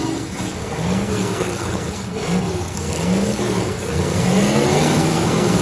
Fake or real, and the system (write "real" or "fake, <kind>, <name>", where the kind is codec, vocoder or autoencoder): fake, codec, SNAC